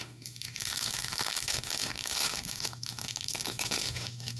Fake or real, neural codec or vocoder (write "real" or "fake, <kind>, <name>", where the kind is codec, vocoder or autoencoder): fake, autoencoder, DAC-VAE